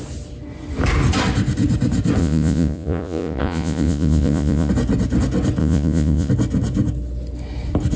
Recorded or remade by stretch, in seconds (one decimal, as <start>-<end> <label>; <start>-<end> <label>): 0.0-2.2 recorded; 2.2-4.7 remade; 4.7-5.6 recorded; 5.6-6.3 remade; 6.3-8.0 recorded